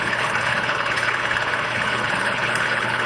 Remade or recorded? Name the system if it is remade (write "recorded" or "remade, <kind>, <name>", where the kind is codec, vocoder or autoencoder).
remade, codec, HILCodec